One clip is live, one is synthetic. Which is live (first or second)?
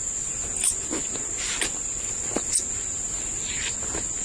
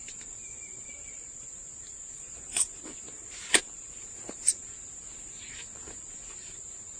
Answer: first